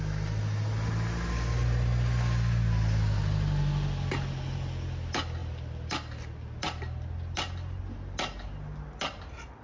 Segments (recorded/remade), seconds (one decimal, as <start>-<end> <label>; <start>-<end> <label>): 0.0-9.6 recorded